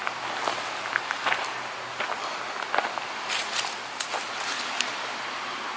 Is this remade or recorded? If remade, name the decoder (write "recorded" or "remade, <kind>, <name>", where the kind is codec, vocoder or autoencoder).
recorded